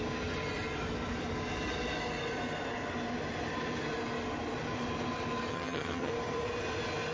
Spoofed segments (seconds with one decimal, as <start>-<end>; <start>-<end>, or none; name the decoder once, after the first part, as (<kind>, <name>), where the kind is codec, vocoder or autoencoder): 5.5-6.1 (vocoder, HiFi-GAN)